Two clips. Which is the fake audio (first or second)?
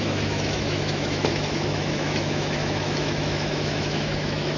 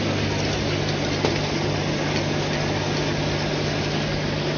first